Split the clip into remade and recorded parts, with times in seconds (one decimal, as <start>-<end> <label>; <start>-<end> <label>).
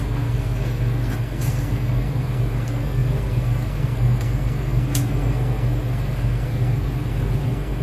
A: 0.0-7.8 remade